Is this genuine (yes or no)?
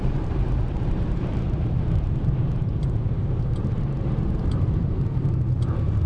no